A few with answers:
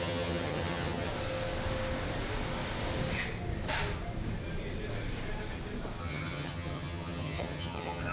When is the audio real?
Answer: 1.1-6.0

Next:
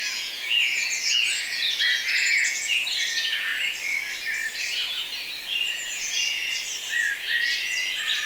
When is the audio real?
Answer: 3.5-5.7; 6.4-8.3

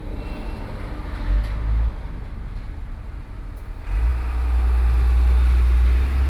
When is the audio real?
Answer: 0.0-6.3

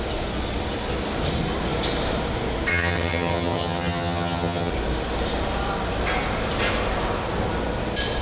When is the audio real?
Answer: 0.0-2.7; 4.7-8.2

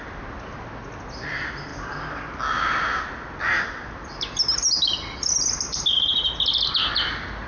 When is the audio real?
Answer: 0.0-7.5

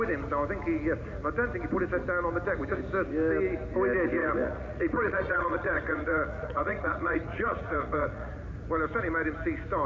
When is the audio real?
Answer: 0.0-4.2; 8.3-9.9

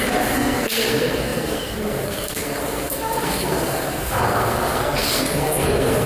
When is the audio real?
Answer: none